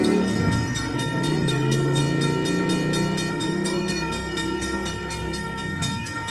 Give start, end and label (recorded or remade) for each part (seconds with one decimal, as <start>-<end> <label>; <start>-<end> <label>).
0.0-2.0 remade; 2.0-3.3 recorded; 3.3-6.3 remade